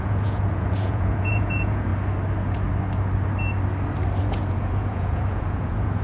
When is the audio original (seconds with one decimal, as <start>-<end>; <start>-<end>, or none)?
1.9-4.2